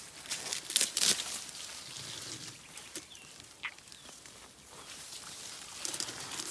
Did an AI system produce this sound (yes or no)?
no